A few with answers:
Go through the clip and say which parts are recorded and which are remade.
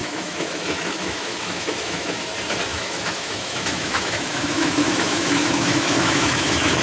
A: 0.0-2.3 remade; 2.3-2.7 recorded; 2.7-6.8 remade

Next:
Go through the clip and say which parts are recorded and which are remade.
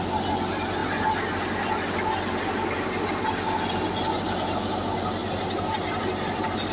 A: 0.0-6.7 recorded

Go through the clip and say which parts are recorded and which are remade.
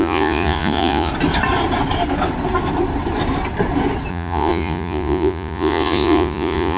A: 0.0-1.1 remade; 1.1-4.1 recorded; 4.1-6.8 remade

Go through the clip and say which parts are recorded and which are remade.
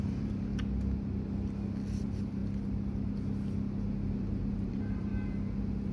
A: 0.0-0.5 remade; 0.5-2.0 recorded; 2.0-2.4 remade; 2.4-4.1 recorded; 4.1-5.1 remade; 5.1-5.9 recorded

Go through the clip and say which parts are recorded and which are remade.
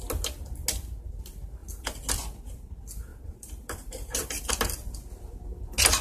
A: 0.0-3.1 recorded; 3.1-4.5 remade; 4.5-6.0 recorded